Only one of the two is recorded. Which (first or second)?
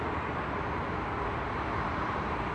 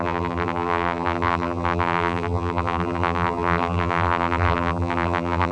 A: first